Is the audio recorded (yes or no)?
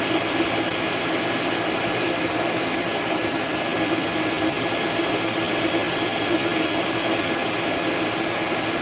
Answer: yes